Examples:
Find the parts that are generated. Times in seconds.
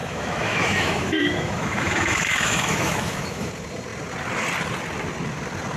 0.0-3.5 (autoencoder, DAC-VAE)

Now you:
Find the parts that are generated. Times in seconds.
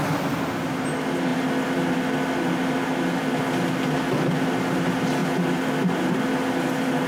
none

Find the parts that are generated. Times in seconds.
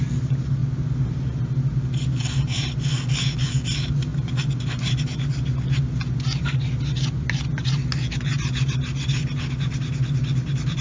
none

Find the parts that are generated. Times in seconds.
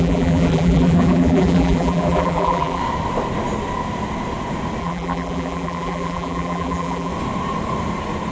0.0-2.8 (vocoder, BigVGAN v2); 4.8-7.1